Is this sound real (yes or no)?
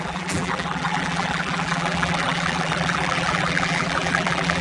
no